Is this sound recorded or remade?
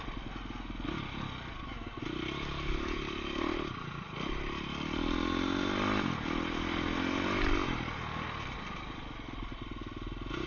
recorded